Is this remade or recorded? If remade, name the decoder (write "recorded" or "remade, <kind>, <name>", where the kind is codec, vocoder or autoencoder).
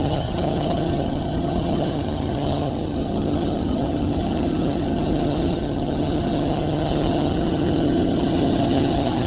remade, vocoder, HiFi-GAN